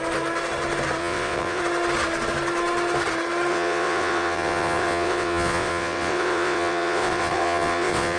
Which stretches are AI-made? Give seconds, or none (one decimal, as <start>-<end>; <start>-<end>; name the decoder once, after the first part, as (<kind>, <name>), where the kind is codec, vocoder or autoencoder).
1.0-1.6 (vocoder, WaveNeXt); 3.5-8.2